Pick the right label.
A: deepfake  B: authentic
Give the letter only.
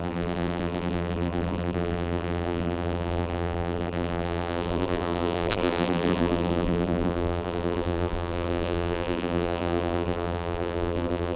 A